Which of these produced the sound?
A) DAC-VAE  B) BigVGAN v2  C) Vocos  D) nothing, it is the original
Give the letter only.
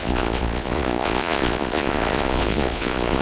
C